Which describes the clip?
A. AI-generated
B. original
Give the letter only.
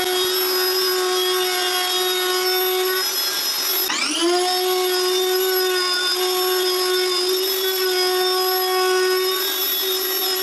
B